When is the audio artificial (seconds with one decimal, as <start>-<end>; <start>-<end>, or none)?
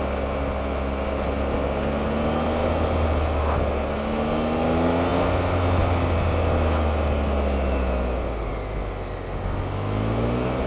none